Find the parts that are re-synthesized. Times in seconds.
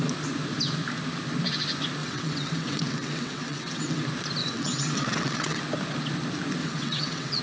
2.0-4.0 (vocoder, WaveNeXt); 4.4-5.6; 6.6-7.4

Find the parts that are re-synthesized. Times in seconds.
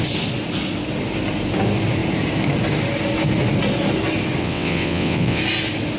4.4-5.4 (vocoder, WaveNeXt)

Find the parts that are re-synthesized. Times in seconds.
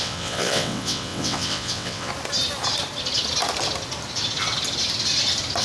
0.0-2.1 (vocoder, WaveNeXt)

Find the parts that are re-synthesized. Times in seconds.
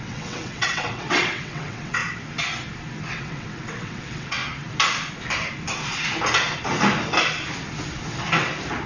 0.0-2.0 (vocoder, WaveNeXt); 3.1-4.4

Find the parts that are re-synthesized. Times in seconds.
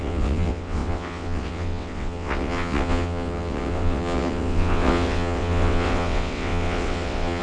0.0-7.4 (vocoder, WaveNeXt)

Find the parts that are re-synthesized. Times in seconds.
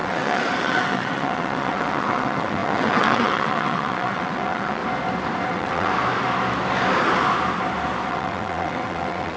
0.0-4.8 (vocoder, WaveNeXt); 5.5-5.9; 8.1-9.4